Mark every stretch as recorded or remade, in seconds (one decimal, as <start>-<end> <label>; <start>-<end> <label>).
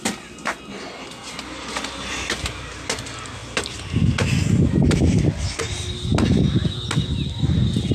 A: 0.0-7.9 recorded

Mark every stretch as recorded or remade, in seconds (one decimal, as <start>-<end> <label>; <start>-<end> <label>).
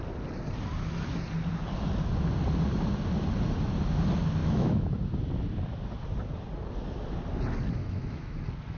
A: 0.0-4.4 recorded; 4.4-5.0 remade; 5.0-7.8 recorded; 7.8-8.4 remade; 8.4-8.8 recorded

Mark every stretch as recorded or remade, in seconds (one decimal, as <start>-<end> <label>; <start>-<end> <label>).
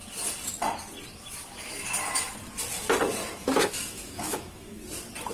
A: 0.0-3.4 recorded; 3.4-4.8 remade; 4.8-5.3 recorded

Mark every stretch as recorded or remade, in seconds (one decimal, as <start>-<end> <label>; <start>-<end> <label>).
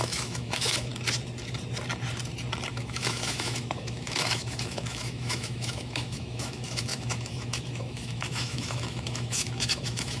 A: 0.0-0.9 remade; 0.9-2.7 recorded; 2.7-10.2 remade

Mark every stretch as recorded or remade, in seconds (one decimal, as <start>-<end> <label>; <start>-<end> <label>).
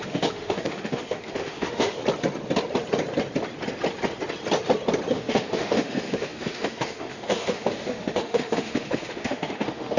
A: 0.0-2.0 remade; 2.0-5.1 recorded; 5.1-10.0 remade